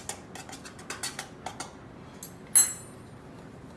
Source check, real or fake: real